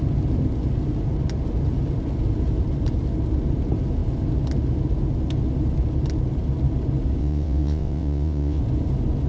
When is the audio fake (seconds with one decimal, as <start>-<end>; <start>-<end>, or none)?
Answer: 7.2-8.6